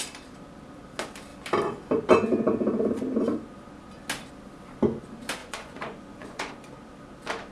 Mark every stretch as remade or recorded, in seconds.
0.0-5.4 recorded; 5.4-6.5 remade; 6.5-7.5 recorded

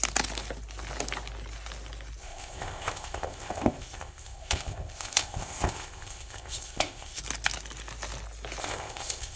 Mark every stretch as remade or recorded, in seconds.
0.0-2.2 recorded; 2.2-7.2 remade; 7.2-8.6 recorded; 8.6-9.4 remade

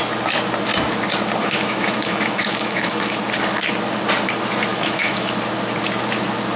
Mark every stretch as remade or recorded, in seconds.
0.0-1.4 recorded; 1.4-3.2 remade; 3.2-4.7 recorded; 4.7-5.3 remade; 5.3-6.6 recorded

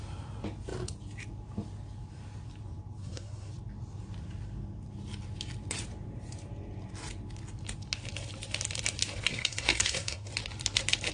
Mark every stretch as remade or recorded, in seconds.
0.0-3.0 recorded; 3.0-3.5 remade; 3.5-9.3 recorded; 9.3-10.3 remade; 10.3-11.1 recorded

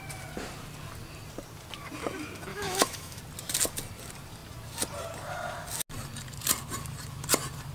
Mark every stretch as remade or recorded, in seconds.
0.0-2.5 recorded; 2.5-3.2 remade; 3.2-7.7 recorded

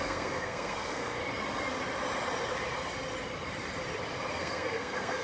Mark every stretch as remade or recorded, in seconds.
0.0-1.2 remade; 1.2-4.3 recorded; 4.3-5.2 remade